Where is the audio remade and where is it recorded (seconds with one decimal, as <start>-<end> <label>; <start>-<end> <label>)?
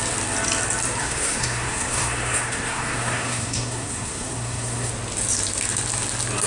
0.0-1.0 recorded; 1.0-4.9 remade; 4.9-6.5 recorded